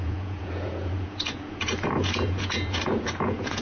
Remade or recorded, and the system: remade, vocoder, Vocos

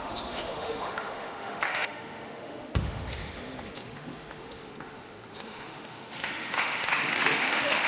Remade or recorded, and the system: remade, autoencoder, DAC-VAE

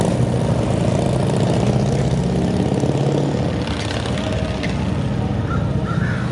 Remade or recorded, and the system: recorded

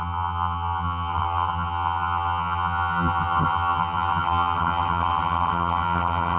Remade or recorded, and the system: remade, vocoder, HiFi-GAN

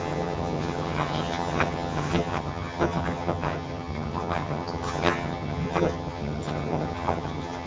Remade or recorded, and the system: remade, vocoder, HiFi-GAN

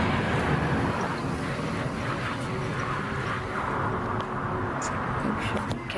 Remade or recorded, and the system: recorded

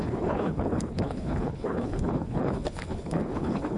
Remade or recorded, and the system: remade, codec, HILCodec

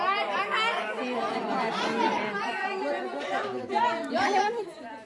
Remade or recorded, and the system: recorded